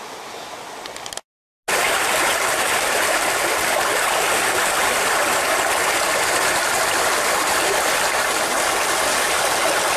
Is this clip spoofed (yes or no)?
no